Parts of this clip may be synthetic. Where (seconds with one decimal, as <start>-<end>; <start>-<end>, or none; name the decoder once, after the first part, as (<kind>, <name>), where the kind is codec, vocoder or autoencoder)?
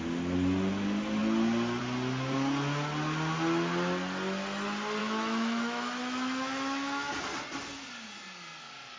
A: 5.0-7.1 (autoencoder, DAC-VAE)